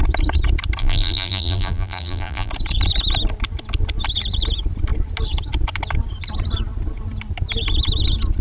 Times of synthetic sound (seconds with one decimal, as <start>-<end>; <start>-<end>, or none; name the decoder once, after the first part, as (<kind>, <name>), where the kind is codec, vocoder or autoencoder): 0.8-2.5 (vocoder, BigVGAN v2)